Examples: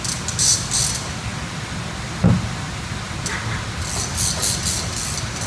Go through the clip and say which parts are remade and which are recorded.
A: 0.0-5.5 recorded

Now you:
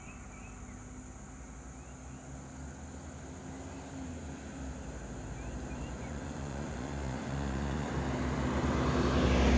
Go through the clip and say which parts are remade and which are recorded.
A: 0.0-5.8 recorded; 5.8-7.9 remade; 7.9-9.6 recorded

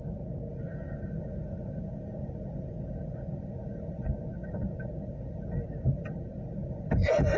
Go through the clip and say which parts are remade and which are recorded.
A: 0.0-7.4 recorded

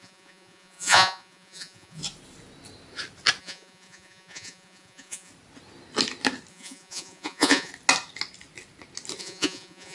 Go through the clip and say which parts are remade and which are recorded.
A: 0.0-2.0 remade; 2.0-3.4 recorded; 3.4-5.3 remade; 5.3-6.5 recorded; 6.5-7.7 remade; 7.7-9.2 recorded; 9.2-9.9 remade

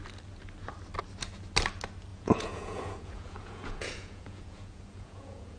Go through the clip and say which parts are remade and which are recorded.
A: 0.0-2.1 recorded; 2.1-5.6 remade

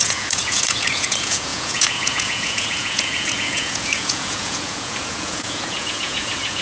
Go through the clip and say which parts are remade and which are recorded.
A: 0.0-6.6 remade

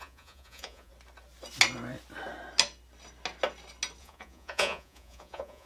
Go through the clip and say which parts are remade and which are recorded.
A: 0.0-0.9 remade; 0.9-4.0 recorded; 4.0-5.7 remade

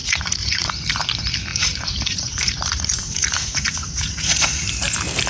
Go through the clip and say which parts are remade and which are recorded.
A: 0.0-0.7 remade; 0.7-1.5 recorded; 1.5-4.6 remade; 4.6-5.3 recorded